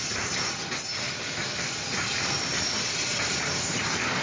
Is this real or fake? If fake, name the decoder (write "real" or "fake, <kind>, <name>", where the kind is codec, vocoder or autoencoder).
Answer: real